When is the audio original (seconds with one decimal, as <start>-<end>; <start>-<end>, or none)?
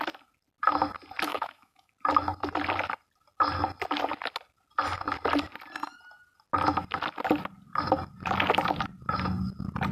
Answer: 0.0-1.3; 1.9-9.9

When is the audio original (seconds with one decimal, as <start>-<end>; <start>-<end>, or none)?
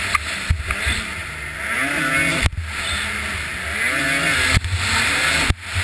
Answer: 0.0-5.8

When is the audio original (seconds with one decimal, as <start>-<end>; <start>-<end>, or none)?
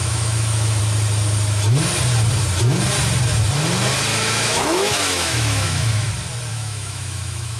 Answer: 0.8-4.1; 6.1-6.5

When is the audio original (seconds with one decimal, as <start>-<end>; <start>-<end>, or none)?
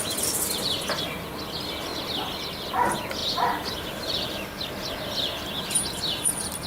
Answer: 0.0-6.7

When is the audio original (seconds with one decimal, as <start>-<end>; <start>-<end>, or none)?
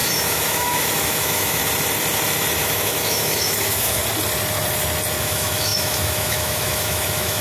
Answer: 1.6-2.6; 4.0-5.2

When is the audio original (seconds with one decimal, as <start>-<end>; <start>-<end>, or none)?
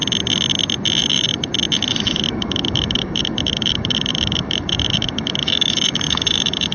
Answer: 0.0-1.0; 1.5-2.3